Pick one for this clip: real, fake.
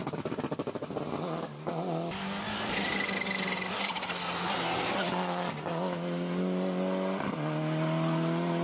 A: real